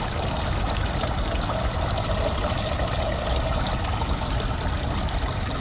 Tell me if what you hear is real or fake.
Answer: real